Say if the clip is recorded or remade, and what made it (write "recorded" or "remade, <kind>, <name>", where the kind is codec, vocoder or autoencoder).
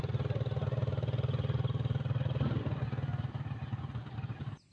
recorded